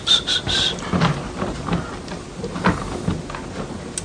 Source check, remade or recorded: recorded